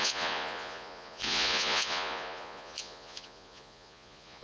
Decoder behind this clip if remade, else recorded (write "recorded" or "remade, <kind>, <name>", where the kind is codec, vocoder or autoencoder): remade, vocoder, Vocos